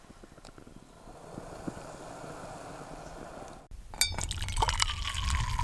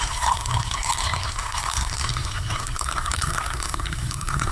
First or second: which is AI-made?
second